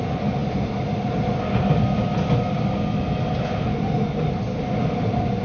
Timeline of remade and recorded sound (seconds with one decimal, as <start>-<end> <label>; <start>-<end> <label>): 0.0-5.4 recorded

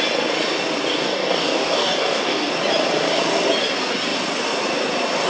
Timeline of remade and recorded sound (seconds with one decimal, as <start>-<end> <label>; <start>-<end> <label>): 0.0-0.9 recorded; 0.9-2.5 remade; 2.5-5.3 recorded

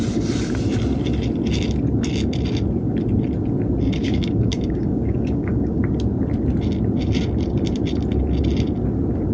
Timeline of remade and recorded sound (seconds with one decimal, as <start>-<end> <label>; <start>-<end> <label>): 0.0-4.0 recorded; 4.0-5.8 remade; 5.8-9.3 recorded

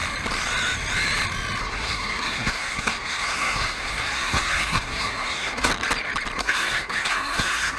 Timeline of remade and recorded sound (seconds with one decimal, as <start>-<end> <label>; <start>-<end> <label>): 0.0-1.6 recorded; 1.6-5.7 remade; 5.7-6.4 recorded; 6.4-7.8 remade

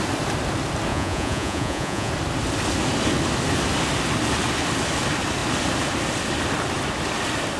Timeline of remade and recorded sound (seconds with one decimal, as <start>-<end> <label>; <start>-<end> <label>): 0.0-0.9 recorded; 0.9-2.1 remade; 2.1-7.6 recorded

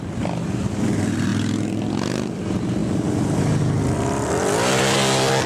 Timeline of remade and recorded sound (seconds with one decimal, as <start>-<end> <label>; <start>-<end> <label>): 0.0-5.5 recorded